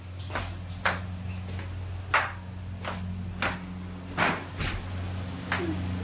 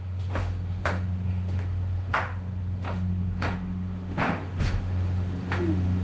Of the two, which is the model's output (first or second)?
second